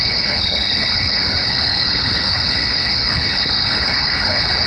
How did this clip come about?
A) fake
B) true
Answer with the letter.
A